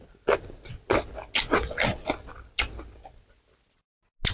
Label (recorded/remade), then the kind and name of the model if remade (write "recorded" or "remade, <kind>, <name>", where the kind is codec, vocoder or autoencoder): recorded